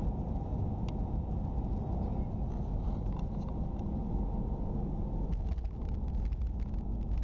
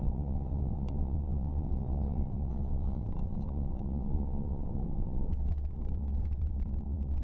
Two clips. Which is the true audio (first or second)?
first